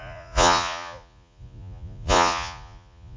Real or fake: fake